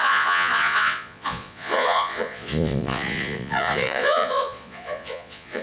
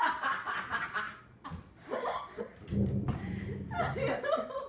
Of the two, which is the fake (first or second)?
first